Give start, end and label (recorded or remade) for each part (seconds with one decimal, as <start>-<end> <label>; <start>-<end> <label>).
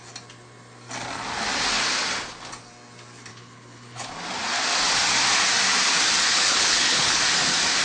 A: 0.0-3.3 recorded; 3.3-4.1 remade; 4.1-6.3 recorded; 6.3-7.2 remade; 7.2-7.8 recorded